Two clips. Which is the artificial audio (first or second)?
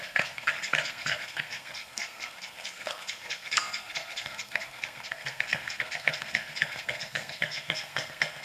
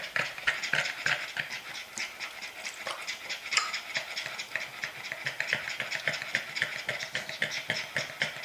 first